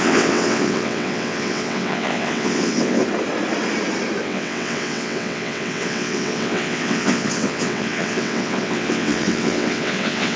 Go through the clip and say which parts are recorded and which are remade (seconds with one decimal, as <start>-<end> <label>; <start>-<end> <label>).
0.0-3.0 remade; 3.0-4.2 recorded; 4.2-10.4 remade